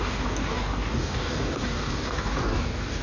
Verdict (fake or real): fake